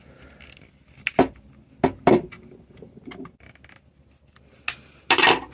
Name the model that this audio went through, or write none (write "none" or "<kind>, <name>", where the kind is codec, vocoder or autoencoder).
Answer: none